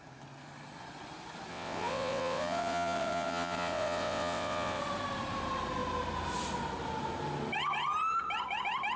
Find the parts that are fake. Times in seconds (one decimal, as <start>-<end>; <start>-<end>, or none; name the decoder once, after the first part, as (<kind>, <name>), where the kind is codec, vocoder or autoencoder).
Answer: 1.5-4.8 (vocoder, WaveNeXt)